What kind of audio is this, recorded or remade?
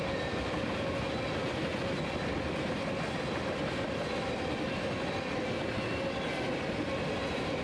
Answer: recorded